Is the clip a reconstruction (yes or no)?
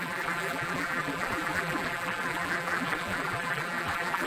yes